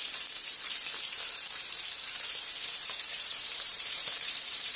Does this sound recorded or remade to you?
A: remade